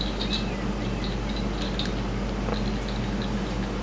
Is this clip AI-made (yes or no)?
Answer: no